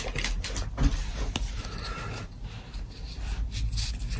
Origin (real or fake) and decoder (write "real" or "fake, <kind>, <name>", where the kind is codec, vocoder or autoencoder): real